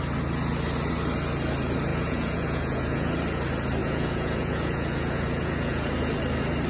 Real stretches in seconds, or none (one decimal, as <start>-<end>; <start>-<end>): 0.0-1.9; 3.1-3.8; 5.9-6.7